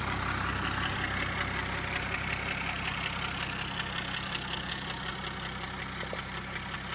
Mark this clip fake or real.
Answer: real